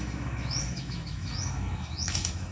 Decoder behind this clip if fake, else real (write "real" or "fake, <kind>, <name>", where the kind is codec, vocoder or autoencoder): fake, autoencoder, DAC-VAE